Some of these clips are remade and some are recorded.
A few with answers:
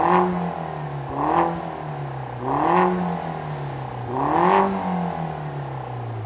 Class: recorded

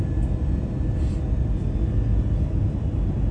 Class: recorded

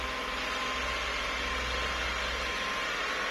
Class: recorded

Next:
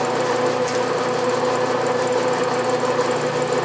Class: recorded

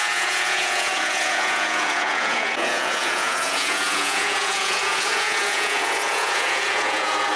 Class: remade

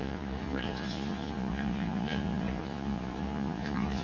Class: remade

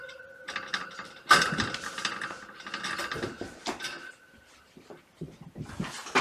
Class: recorded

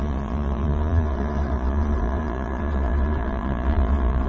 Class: remade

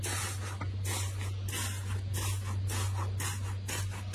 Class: recorded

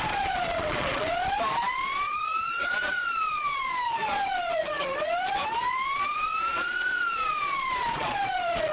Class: remade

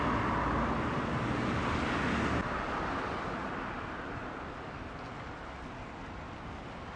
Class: recorded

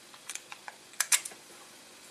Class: remade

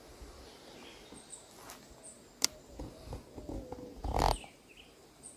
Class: recorded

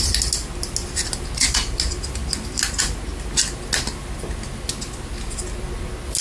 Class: recorded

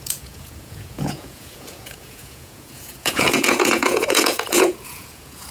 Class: remade